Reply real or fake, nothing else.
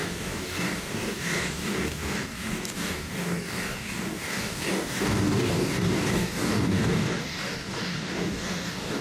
fake